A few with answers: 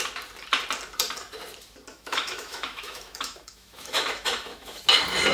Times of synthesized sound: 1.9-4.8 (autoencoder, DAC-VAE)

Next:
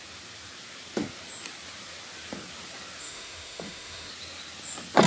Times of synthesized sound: 3.0-4.1 (autoencoder, DAC-VAE)

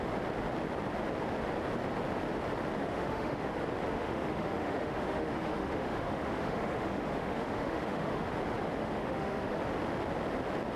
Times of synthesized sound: 2.8-3.5 (autoencoder, DAC-VAE); 3.9-8.3; 8.8-9.6